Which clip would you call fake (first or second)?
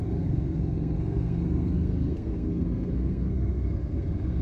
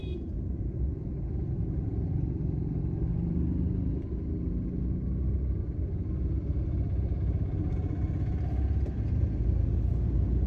first